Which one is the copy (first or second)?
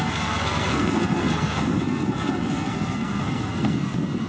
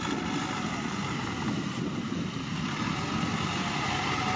first